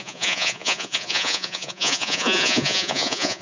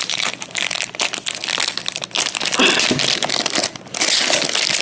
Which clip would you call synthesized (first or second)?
first